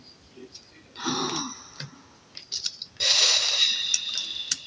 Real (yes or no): yes